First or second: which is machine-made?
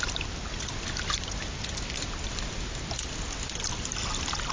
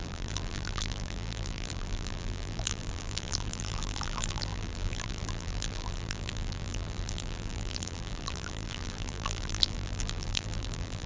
second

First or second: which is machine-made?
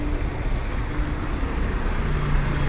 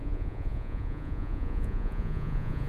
second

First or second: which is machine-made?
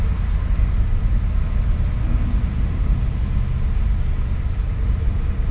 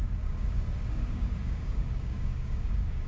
second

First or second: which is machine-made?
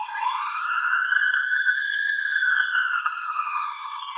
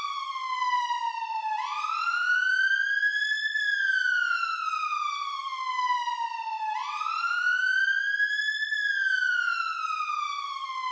first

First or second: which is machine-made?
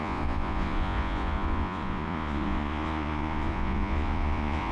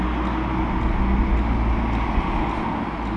first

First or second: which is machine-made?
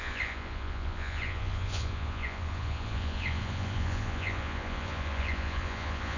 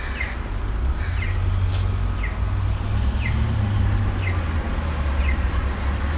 first